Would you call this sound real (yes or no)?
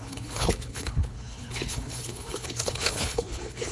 no